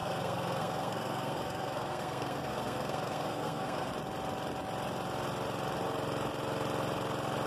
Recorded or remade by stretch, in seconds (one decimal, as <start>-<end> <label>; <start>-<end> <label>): 0.0-3.9 remade; 3.9-7.5 recorded